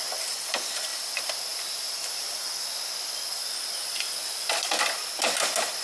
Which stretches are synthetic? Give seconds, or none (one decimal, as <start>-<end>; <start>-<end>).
none